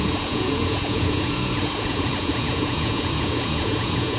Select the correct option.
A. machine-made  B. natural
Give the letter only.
A